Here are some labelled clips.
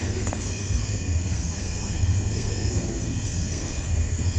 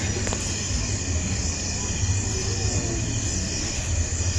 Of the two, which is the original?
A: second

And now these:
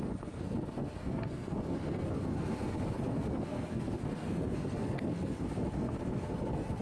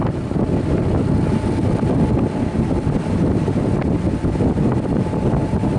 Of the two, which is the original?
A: second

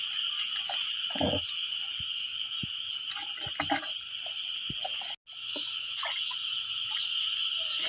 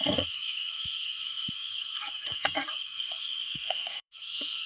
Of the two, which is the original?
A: first